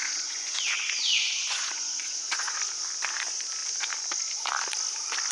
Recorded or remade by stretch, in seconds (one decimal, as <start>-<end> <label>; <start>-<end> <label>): 0.0-2.6 remade; 2.6-5.3 recorded